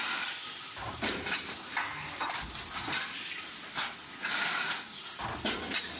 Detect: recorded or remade recorded